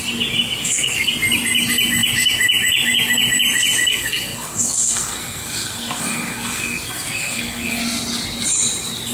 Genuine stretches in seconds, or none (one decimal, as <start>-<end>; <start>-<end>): 0.0-0.6; 1.1-3.9; 7.8-9.1